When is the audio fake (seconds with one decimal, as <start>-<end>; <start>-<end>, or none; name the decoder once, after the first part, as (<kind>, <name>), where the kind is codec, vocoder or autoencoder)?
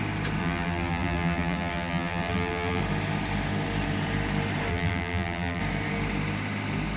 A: 0.4-2.8 (vocoder, BigVGAN v2); 4.7-5.6